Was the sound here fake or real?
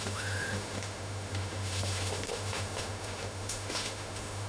fake